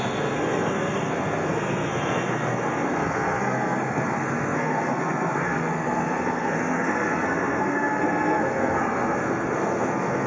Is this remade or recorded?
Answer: remade